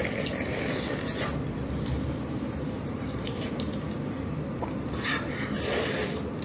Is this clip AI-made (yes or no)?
yes